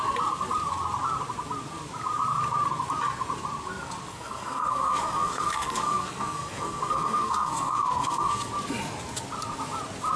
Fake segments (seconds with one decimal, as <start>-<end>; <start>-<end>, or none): 4.1-8.5